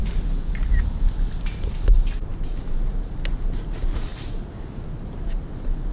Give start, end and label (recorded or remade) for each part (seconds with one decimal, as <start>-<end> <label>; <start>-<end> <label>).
0.0-5.9 recorded